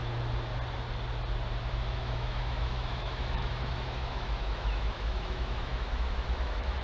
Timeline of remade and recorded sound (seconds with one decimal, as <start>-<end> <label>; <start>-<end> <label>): 0.0-1.7 recorded; 1.7-6.8 remade